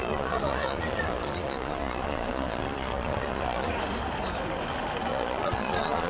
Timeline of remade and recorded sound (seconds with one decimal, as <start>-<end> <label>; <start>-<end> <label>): 0.0-3.7 remade; 3.7-5.1 recorded; 5.1-6.1 remade